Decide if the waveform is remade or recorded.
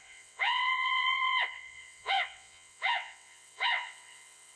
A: remade